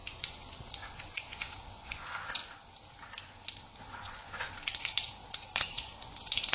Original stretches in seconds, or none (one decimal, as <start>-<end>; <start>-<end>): 2.4-3.8